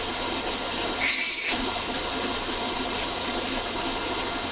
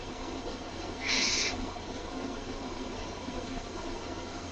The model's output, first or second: second